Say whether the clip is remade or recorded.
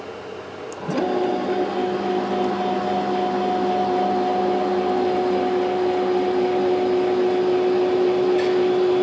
recorded